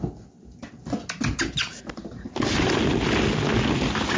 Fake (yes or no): no